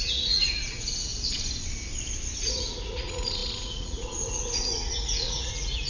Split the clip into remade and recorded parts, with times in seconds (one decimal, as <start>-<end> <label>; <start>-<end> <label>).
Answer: 0.0-1.1 remade; 1.1-2.5 recorded; 2.5-5.9 remade